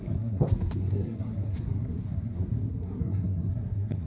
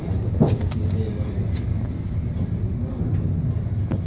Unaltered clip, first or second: second